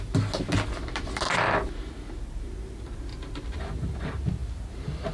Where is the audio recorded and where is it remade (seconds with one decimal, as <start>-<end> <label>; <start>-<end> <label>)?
0.0-3.1 recorded; 3.1-3.7 remade; 3.7-5.1 recorded